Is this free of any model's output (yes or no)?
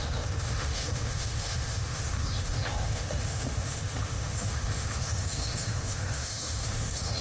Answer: no